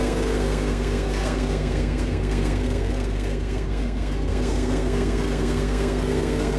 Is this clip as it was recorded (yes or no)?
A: no